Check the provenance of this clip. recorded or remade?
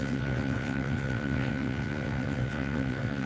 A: remade